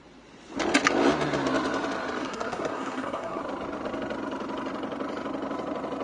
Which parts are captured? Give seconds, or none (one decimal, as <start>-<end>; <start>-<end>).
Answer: 0.0-2.2; 3.4-6.0